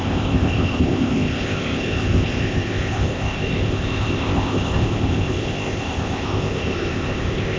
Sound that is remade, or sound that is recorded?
remade